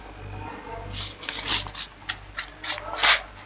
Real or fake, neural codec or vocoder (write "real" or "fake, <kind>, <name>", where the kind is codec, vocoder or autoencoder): real